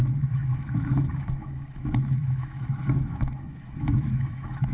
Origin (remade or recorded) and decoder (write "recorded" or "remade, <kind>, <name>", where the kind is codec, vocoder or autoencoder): remade, autoencoder, DAC-VAE